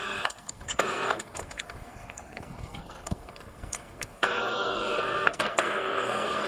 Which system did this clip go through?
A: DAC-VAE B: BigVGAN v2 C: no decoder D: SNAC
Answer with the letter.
D